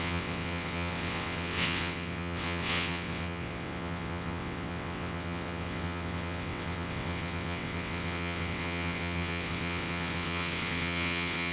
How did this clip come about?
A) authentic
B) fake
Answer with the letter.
B